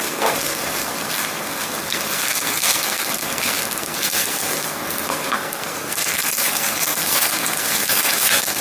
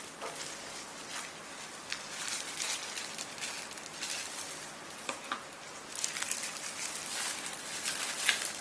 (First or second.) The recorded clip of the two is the second